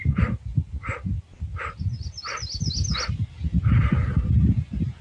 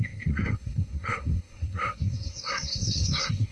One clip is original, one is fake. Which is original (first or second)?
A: first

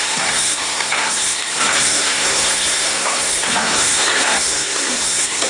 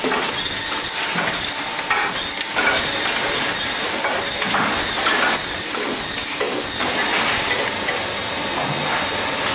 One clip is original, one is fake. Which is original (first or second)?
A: second